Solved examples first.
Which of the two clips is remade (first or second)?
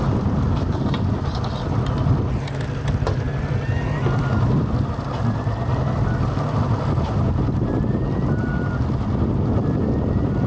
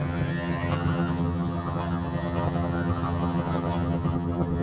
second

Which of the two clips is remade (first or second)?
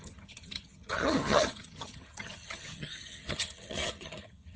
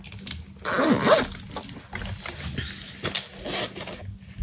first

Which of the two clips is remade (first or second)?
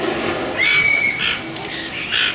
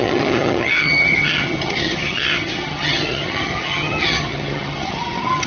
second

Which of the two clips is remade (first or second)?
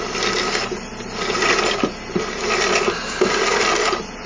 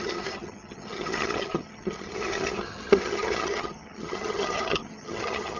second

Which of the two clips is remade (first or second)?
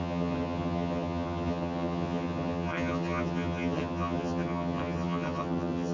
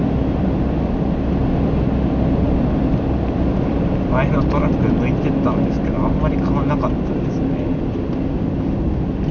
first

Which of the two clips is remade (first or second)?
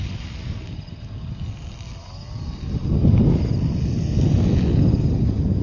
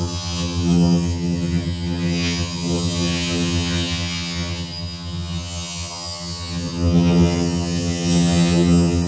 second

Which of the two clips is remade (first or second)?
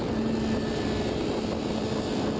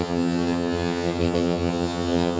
second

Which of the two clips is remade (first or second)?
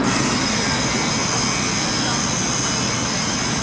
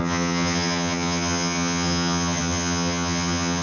second